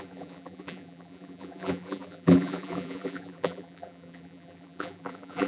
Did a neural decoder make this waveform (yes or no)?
yes